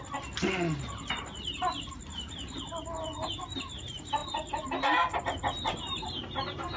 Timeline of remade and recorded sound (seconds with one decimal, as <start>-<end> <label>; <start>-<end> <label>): 0.0-6.8 recorded